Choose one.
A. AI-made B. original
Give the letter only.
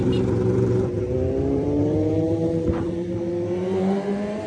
A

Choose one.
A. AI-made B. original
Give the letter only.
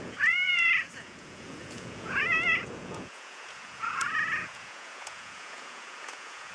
A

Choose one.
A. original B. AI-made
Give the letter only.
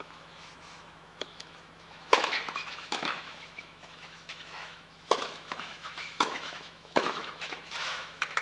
B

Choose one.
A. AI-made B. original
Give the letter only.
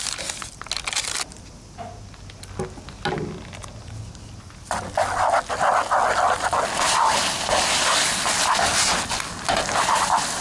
B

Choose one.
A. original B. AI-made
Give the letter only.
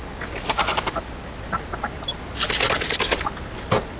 A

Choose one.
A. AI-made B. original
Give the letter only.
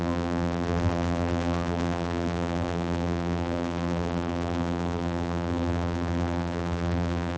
A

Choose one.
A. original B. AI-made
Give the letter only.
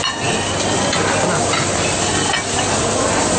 A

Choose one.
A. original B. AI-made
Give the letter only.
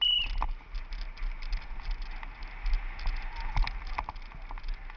A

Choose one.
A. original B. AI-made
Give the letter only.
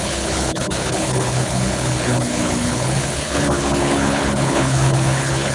B